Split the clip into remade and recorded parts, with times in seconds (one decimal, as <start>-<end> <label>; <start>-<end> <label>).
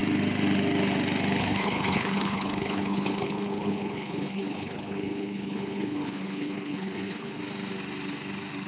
0.0-1.4 recorded; 1.4-7.4 remade; 7.4-8.7 recorded